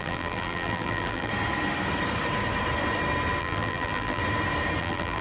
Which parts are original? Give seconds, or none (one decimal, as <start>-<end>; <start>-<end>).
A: 1.3-3.4; 4.2-4.8